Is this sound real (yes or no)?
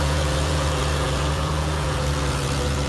no